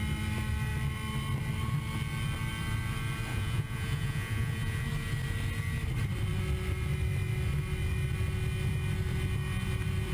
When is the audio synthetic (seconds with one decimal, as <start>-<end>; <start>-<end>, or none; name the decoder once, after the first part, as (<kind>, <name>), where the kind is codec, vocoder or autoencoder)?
3.3-4.8 (vocoder, Vocos)